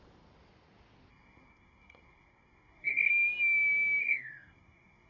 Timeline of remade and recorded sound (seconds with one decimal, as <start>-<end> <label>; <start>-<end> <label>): 0.0-1.1 recorded; 1.1-3.1 remade; 3.1-4.0 recorded; 4.0-5.1 remade